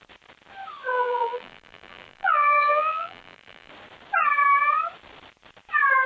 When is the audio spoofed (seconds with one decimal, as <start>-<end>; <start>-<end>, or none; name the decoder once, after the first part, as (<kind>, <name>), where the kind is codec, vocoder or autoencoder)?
0.9-3.7 (vocoder, BigVGAN v2)